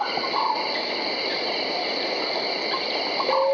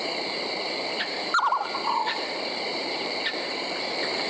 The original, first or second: first